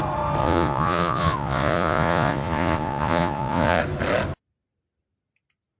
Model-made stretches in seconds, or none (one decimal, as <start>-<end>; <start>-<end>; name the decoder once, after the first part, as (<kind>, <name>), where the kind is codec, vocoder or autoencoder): 0.4-3.8 (vocoder, Vocos)